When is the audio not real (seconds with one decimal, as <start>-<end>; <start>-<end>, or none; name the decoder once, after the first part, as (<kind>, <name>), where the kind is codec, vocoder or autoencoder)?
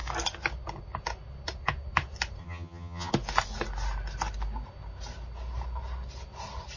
2.4-3.1 (vocoder, HiFi-GAN)